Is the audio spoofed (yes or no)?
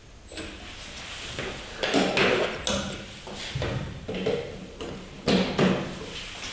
no